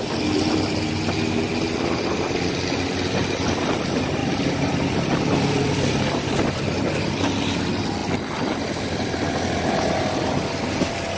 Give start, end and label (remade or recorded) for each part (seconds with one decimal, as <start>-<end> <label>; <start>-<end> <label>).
0.0-4.2 recorded; 4.2-7.1 remade; 7.1-11.2 recorded